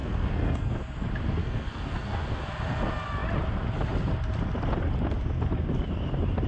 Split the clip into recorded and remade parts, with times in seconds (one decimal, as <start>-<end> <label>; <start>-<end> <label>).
0.0-0.8 remade; 0.8-1.4 recorded; 1.4-2.4 remade; 2.4-6.5 recorded